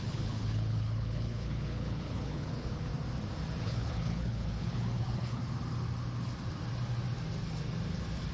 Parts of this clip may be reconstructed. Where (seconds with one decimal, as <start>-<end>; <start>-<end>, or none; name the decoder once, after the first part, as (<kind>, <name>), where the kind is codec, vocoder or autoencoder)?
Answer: 0.0-2.9 (codec, HILCodec); 3.6-5.4